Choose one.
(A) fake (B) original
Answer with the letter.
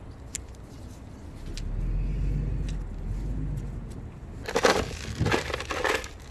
B